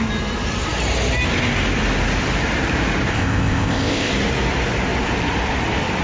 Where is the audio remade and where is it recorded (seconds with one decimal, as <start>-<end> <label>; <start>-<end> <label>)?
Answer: 0.0-3.1 recorded; 3.1-4.1 remade; 4.1-6.0 recorded